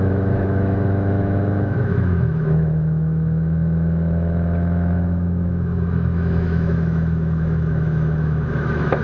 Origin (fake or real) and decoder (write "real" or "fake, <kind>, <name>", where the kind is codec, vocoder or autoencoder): fake, autoencoder, DAC-VAE